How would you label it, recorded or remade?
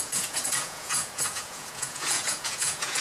remade